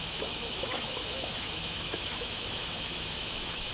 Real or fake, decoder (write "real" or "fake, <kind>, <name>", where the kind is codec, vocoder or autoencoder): fake, autoencoder, DAC-VAE